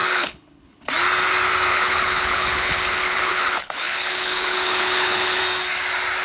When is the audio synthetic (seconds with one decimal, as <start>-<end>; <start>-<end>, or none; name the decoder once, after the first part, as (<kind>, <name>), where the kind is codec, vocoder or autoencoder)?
0.0-0.9 (codec, HILCodec); 1.7-5.4